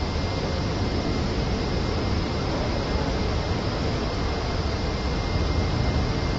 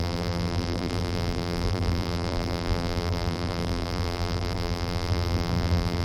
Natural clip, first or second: first